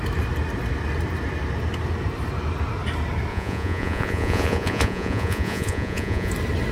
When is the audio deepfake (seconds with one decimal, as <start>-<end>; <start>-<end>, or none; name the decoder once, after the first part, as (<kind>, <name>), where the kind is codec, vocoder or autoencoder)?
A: 3.3-6.3 (vocoder, Vocos)